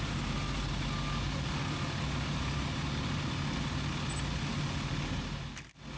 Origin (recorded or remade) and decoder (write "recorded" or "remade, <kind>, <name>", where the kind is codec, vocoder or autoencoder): recorded